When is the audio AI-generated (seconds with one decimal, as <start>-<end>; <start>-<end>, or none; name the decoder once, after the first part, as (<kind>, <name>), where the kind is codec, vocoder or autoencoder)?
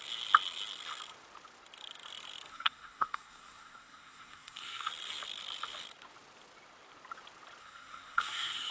2.5-4.9 (codec, SNAC); 7.6-8.7